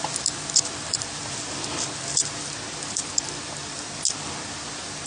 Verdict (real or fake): real